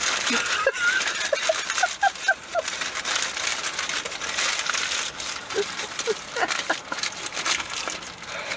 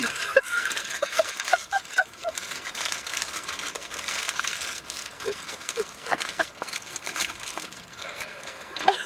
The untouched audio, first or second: first